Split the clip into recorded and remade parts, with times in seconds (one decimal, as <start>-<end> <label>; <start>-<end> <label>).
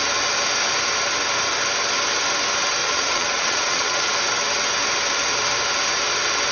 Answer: 0.0-2.8 recorded; 2.8-4.1 remade; 4.1-6.5 recorded